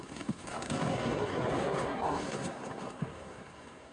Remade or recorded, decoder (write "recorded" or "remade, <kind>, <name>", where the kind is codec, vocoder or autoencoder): remade, codec, SNAC